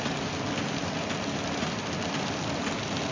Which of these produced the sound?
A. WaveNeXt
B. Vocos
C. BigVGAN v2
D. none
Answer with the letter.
D